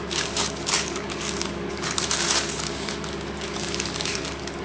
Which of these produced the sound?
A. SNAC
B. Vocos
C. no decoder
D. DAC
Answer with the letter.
D